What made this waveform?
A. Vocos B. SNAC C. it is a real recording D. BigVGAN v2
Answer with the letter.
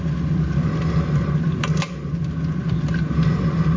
C